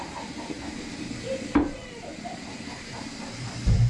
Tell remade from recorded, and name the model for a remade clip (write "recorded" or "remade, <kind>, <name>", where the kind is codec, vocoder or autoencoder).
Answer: remade, vocoder, BigVGAN v2